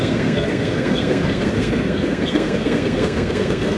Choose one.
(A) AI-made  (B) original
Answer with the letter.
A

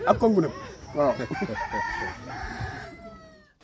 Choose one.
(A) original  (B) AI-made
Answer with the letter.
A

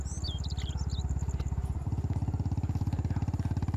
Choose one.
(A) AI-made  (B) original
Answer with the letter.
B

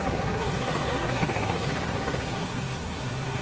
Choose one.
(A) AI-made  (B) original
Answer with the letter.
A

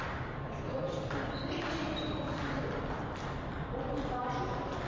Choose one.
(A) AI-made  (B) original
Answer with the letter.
B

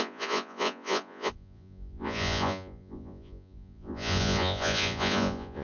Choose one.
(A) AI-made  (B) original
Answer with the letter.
A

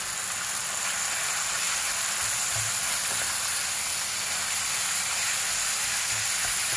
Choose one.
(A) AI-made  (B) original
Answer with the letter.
B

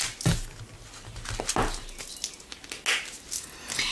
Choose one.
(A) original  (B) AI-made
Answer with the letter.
A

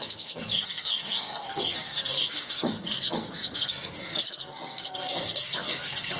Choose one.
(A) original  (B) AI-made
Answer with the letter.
B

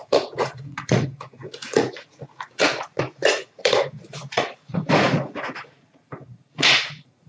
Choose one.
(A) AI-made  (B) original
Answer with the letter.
A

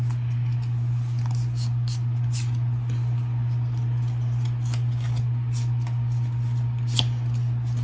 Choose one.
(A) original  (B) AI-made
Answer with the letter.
A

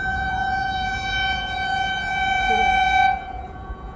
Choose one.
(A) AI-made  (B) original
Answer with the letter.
A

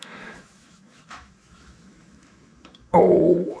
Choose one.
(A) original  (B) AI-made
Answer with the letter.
B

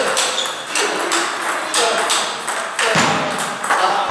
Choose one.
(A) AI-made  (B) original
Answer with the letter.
B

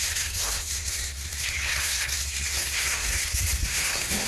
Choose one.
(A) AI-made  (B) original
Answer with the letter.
A